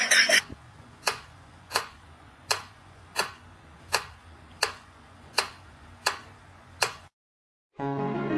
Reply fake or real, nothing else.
fake